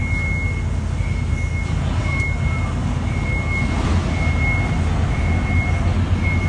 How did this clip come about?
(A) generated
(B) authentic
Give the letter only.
B